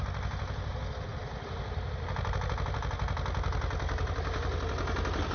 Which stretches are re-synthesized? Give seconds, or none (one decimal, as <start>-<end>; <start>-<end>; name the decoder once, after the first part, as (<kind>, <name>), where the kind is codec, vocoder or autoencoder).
none